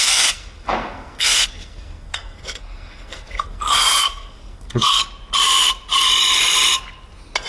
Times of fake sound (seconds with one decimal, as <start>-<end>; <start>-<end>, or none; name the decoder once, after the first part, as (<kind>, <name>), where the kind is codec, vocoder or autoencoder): 0.0-5.0 (codec, SNAC)